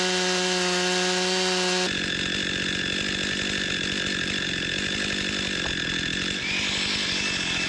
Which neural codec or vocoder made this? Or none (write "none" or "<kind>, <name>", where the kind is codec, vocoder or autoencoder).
none